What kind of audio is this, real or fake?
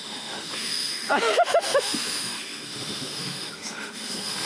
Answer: fake